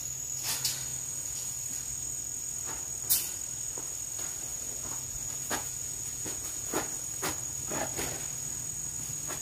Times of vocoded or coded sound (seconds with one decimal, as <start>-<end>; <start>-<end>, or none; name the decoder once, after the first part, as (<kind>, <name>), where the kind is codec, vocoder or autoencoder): 0.9-1.6 (vocoder, Vocos); 4.5-6.9

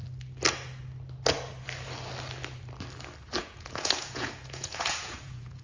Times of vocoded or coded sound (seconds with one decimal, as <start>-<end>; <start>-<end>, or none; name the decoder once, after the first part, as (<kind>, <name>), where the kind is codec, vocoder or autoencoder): 3.4-5.6 (vocoder, Vocos)